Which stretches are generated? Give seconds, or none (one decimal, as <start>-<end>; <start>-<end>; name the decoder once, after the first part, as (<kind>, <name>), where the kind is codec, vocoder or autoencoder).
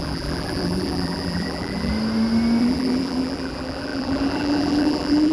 0.0-1.9 (vocoder, BigVGAN v2); 2.6-5.3